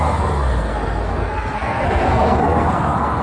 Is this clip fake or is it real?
fake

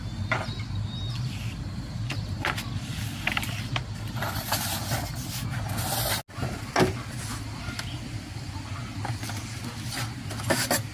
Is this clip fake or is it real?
real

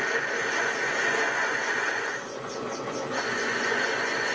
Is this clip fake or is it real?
fake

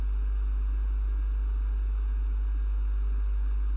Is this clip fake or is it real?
real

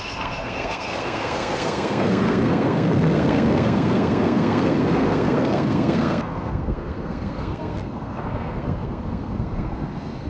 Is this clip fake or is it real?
fake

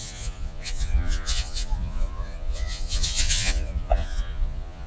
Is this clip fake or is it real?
fake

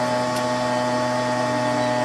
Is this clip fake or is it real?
real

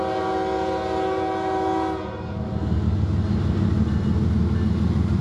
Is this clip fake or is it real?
real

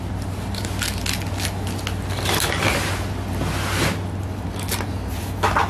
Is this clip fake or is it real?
real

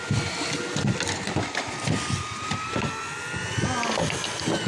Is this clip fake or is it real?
real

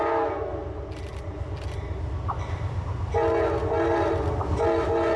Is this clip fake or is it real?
real